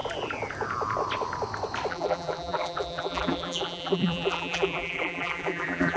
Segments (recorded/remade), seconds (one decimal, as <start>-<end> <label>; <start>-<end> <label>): 0.0-1.9 recorded; 1.9-6.0 remade